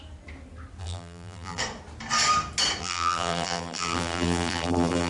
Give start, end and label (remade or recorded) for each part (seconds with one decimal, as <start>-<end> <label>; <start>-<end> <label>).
0.0-0.8 recorded; 0.8-1.6 remade; 1.6-2.8 recorded; 2.8-5.1 remade